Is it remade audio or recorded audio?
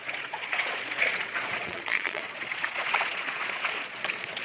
remade